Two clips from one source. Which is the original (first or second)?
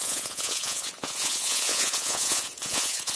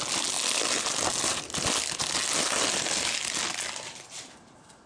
second